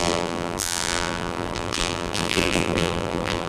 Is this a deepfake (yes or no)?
yes